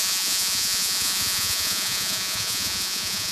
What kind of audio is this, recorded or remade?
remade